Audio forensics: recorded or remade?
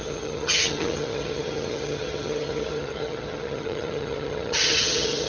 remade